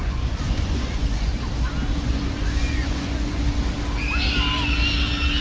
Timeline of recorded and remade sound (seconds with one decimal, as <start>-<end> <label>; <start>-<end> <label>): 0.0-1.3 remade; 1.3-1.9 recorded; 1.9-3.4 remade; 3.4-5.4 recorded